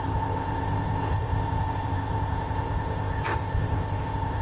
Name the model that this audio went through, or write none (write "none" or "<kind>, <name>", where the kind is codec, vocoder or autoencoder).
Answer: codec, ZipCodec